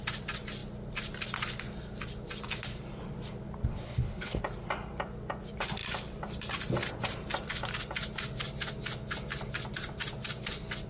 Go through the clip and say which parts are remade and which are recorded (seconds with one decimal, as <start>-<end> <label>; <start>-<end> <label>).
0.0-3.7 recorded; 3.7-4.4 remade; 4.4-10.9 recorded